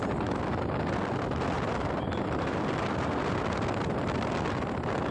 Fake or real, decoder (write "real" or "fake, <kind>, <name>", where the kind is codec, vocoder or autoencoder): real